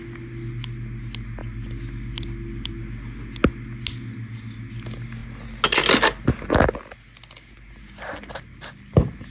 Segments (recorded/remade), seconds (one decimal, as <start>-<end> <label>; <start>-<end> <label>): 0.0-9.3 recorded